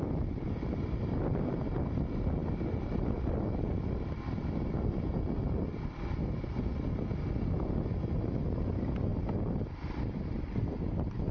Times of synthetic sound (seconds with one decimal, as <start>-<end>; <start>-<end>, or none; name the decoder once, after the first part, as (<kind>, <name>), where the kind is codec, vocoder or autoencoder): 9.1-10.8 (vocoder, BigVGAN v2)